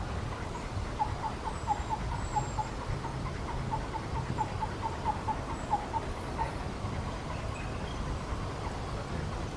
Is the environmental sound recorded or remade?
recorded